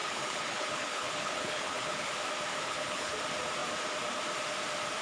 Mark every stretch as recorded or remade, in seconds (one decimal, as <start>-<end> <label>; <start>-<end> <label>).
0.0-2.1 remade; 2.1-2.5 recorded; 2.5-3.1 remade; 3.1-5.0 recorded